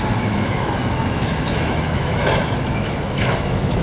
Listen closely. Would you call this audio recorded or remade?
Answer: remade